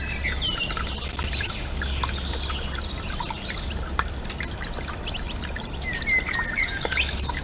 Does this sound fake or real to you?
real